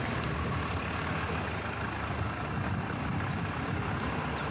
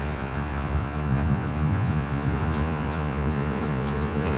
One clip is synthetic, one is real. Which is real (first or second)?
first